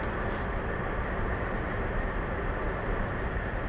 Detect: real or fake fake